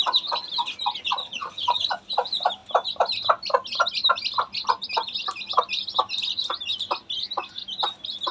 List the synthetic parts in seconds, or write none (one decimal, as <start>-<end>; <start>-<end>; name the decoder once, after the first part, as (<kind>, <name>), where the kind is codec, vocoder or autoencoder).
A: 1.2-1.9 (vocoder, HiFi-GAN)